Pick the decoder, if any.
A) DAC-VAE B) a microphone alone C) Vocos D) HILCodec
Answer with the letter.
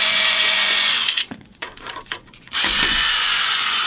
C